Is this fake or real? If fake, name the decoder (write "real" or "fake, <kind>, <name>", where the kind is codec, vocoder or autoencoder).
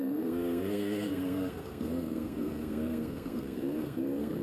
fake, codec, SNAC